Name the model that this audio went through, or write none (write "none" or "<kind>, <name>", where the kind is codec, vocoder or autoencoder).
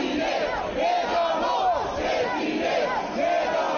none